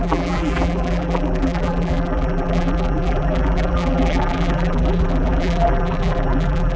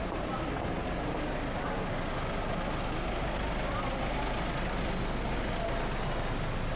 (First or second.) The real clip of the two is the second